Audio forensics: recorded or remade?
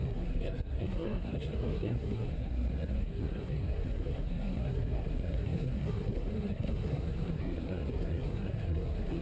remade